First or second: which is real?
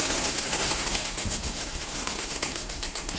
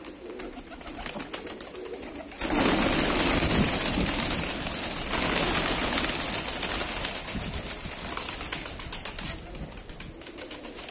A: second